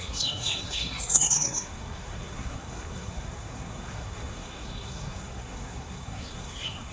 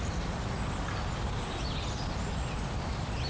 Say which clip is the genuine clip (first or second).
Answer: second